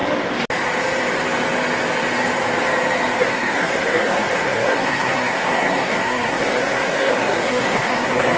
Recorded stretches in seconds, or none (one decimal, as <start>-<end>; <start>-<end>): 0.0-3.2